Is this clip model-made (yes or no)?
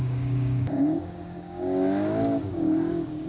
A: yes